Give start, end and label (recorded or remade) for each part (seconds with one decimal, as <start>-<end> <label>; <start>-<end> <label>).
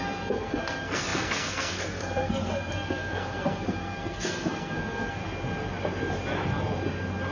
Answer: 0.0-5.2 remade; 5.2-7.3 recorded